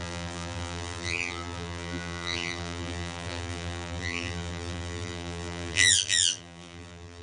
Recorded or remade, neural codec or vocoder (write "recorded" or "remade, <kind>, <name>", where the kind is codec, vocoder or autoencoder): remade, vocoder, BigVGAN v2